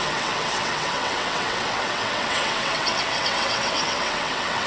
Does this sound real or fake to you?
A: fake